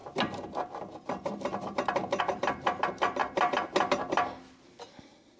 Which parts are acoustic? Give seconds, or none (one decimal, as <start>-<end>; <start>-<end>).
0.0-5.4